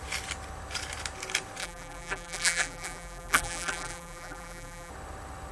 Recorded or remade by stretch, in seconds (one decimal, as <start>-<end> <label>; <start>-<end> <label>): 0.0-1.6 recorded; 1.6-4.9 remade; 4.9-5.5 recorded